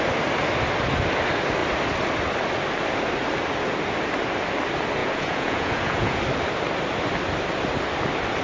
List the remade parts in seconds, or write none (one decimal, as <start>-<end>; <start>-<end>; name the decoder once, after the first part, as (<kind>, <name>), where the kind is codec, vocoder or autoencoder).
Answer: 5.0-6.2 (vocoder, Vocos)